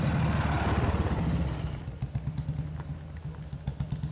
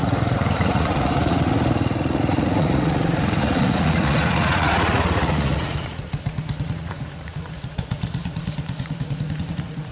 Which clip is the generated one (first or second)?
second